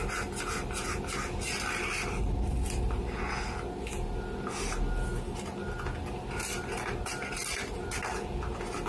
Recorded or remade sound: recorded